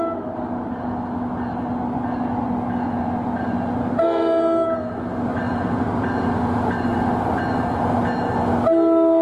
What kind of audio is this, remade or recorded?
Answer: recorded